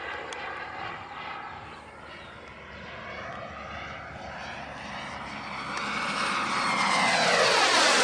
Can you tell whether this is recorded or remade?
recorded